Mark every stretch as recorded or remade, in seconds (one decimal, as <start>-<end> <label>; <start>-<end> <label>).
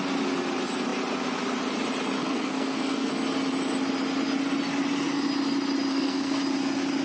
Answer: 0.0-2.2 recorded; 2.2-3.1 remade; 3.1-5.9 recorded; 5.9-6.4 remade; 6.4-7.0 recorded